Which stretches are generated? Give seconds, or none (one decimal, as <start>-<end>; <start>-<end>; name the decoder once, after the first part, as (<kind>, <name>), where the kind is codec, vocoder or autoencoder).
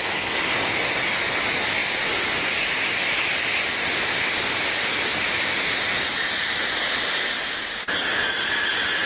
none